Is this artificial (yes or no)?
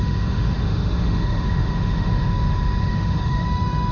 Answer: yes